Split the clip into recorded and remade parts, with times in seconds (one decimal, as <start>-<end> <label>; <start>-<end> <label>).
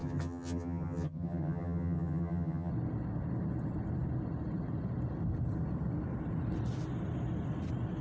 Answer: 0.0-2.7 remade; 2.7-8.0 recorded